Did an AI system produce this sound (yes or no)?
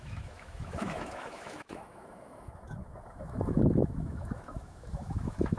yes